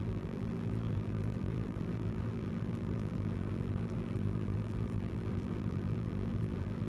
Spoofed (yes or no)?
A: yes